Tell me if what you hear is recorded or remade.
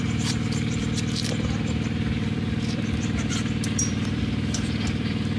remade